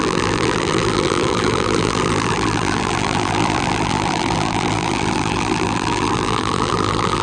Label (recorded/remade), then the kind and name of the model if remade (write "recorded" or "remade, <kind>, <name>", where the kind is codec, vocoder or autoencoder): remade, vocoder, BigVGAN v2